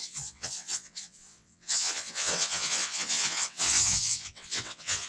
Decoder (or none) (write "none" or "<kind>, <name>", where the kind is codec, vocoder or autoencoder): vocoder, WaveNeXt